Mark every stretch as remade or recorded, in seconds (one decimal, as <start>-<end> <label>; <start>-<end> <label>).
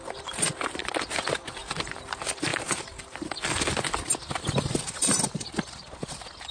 0.0-0.8 remade; 0.8-1.5 recorded; 1.5-2.5 remade; 2.5-6.5 recorded